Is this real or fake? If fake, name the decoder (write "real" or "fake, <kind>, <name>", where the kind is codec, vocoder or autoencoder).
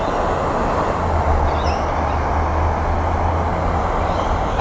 real